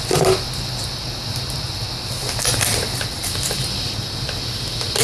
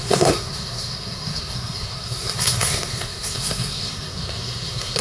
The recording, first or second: first